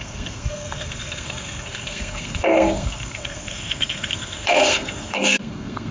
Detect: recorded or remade remade